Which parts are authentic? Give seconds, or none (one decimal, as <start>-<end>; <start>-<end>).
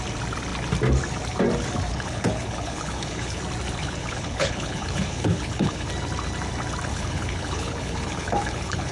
0.0-1.9; 3.4-3.8; 5.9-6.9